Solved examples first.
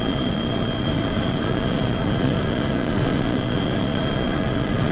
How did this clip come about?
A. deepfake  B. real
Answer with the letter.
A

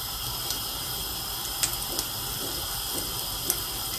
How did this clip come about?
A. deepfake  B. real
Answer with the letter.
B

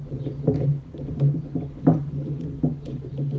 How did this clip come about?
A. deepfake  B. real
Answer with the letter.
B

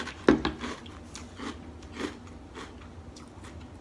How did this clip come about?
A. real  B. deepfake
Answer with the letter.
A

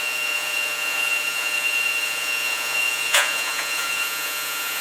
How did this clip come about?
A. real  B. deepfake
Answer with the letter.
B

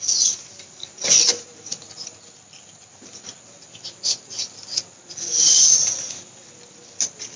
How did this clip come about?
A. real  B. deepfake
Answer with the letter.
A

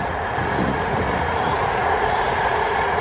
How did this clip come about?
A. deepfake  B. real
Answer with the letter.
A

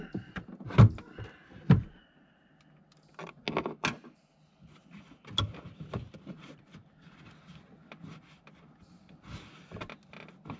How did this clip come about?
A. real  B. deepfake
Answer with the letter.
A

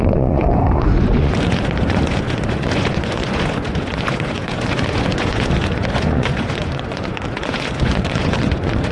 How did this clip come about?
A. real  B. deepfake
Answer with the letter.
B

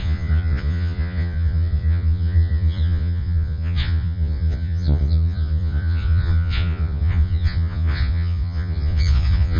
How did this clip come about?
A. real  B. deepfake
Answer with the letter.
B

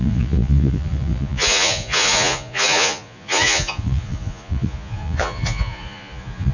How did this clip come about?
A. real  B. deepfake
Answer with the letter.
B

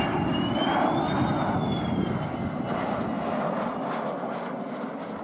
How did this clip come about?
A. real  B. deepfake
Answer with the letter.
A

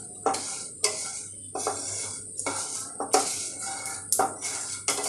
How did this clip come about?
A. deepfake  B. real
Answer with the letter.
B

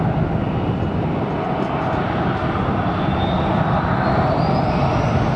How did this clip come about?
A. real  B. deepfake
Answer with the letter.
A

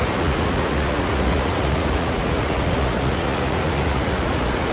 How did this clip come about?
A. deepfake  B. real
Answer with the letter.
A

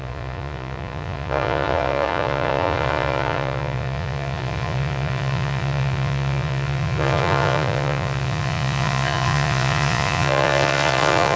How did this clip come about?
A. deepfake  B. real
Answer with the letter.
A